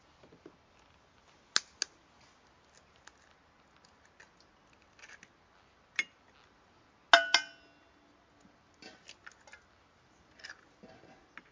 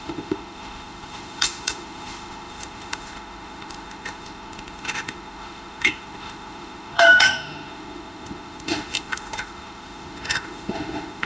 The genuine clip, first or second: first